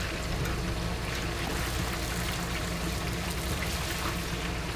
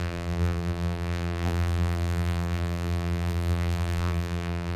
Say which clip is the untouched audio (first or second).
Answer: first